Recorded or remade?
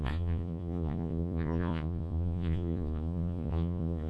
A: remade